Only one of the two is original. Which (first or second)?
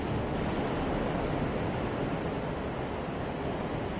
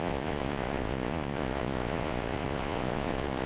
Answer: first